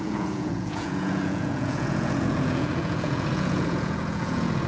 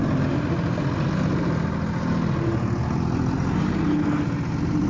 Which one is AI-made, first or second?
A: first